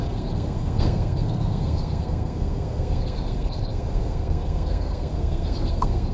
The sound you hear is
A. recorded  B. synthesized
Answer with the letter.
B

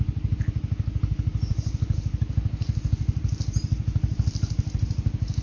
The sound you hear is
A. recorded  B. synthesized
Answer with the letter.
A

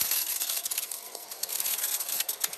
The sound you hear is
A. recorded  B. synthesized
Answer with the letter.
B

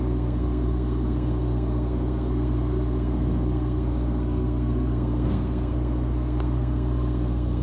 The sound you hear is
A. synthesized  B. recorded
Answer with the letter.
A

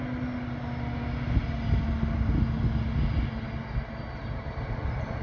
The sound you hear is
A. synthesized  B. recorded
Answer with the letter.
B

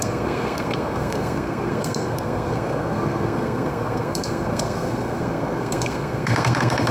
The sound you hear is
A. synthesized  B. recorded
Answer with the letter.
A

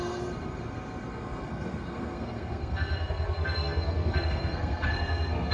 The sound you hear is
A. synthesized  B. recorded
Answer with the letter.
A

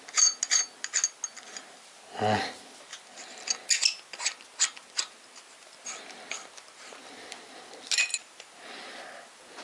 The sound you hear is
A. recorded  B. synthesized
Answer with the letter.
A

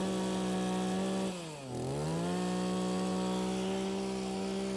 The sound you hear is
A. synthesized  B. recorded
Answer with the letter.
B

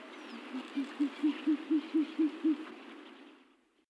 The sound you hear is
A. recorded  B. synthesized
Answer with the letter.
A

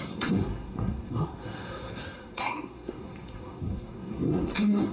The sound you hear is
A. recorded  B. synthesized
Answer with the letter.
B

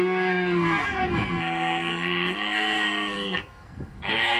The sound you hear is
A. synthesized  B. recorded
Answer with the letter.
A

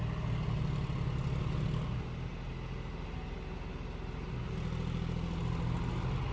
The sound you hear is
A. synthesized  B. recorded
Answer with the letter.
B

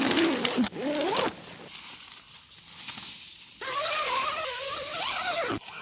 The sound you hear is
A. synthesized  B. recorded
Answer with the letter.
B